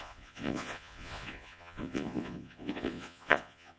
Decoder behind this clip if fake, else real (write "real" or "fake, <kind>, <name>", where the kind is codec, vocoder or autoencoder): fake, vocoder, Vocos